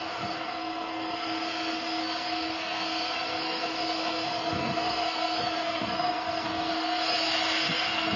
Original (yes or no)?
no